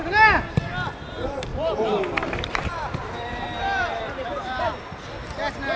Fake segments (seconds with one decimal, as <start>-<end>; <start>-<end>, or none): 1.5-4.6